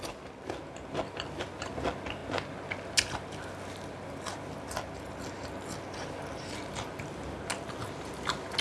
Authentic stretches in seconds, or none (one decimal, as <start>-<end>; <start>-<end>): 0.0-8.6